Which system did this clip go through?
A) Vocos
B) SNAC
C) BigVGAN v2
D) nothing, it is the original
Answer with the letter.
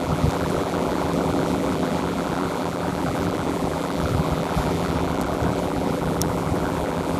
C